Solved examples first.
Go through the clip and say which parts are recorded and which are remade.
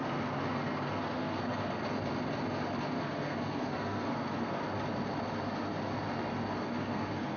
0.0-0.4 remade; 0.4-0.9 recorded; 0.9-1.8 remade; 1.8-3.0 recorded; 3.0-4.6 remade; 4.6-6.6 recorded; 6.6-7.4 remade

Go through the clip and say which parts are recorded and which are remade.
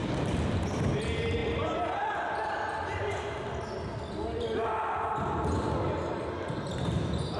0.0-7.4 recorded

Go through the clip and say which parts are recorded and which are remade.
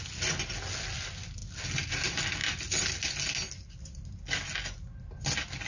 0.0-5.7 recorded